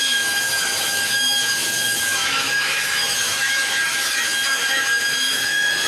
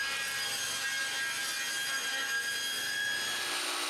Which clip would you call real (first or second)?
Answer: second